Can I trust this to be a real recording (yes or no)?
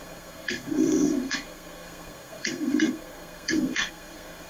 no